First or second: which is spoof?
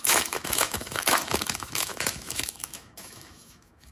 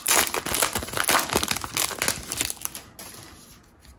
first